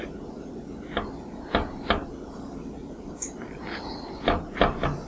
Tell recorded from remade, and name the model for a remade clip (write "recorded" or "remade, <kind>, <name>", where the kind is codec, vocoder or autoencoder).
recorded